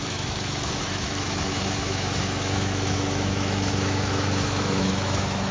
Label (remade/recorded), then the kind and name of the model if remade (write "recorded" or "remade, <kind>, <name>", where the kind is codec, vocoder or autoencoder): remade, autoencoder, DAC-VAE